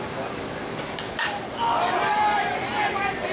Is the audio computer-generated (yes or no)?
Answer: no